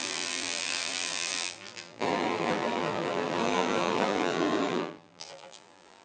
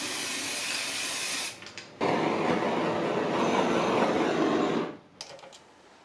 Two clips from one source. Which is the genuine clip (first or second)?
second